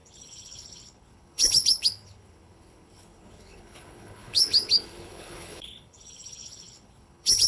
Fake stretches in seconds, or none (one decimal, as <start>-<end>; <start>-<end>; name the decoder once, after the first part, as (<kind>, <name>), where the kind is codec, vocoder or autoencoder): 0.0-7.5 (codec, HILCodec)

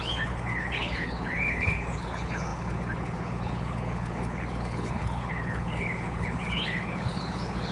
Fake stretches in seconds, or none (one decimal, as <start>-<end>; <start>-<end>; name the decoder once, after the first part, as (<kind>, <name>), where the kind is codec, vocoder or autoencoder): 0.0-7.7 (codec, HILCodec)

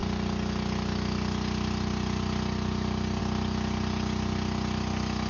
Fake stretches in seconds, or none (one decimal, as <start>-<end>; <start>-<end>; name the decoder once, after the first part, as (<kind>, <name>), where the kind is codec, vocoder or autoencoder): none

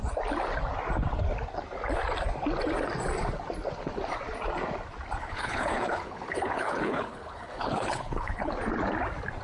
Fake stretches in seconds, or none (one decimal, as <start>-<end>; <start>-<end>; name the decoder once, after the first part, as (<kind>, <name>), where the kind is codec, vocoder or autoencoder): 5.2-8.5 (codec, HILCodec)

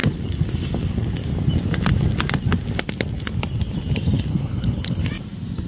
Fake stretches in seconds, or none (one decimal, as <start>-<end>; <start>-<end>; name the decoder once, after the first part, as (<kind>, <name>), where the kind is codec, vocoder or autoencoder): 4.3-5.0 (codec, HILCodec)